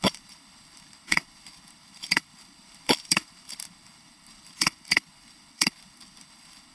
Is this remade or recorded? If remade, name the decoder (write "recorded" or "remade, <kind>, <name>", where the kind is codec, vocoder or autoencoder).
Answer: remade, codec, HILCodec